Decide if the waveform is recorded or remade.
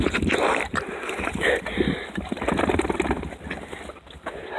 recorded